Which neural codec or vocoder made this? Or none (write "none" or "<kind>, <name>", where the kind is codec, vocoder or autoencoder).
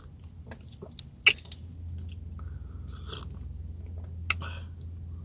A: none